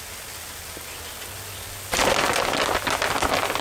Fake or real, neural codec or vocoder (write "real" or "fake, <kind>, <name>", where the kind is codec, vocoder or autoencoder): real